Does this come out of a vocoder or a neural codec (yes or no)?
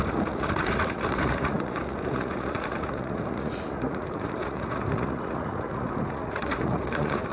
yes